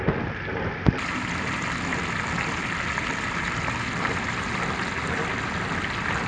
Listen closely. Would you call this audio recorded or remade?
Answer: recorded